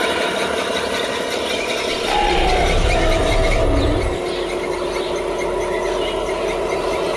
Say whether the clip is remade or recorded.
recorded